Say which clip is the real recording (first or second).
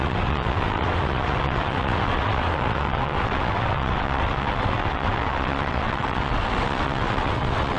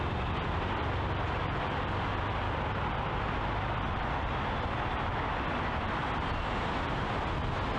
second